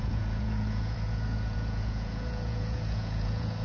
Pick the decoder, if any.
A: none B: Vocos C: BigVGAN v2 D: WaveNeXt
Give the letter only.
B